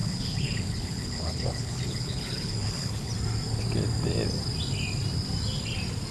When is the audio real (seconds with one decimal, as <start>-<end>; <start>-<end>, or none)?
3.1-6.1